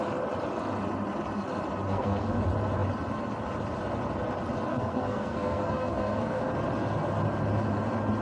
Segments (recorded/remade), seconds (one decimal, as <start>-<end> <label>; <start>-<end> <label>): 0.0-1.9 recorded; 1.9-2.4 remade; 2.4-4.7 recorded; 4.7-6.4 remade; 6.4-8.2 recorded